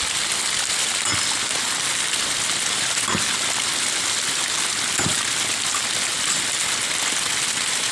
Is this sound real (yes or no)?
yes